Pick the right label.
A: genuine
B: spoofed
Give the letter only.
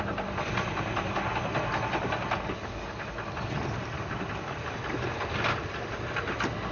A